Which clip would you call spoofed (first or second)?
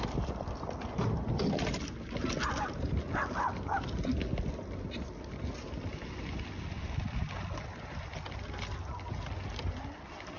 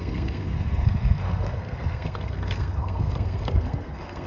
second